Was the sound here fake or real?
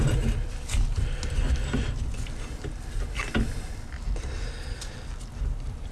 real